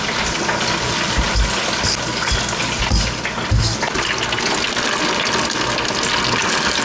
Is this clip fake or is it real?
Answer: real